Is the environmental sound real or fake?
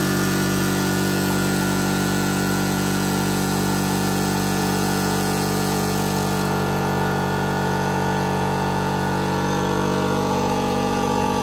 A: fake